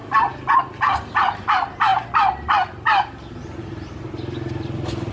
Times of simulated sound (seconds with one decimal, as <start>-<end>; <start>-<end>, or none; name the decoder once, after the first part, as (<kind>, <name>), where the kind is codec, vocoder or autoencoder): none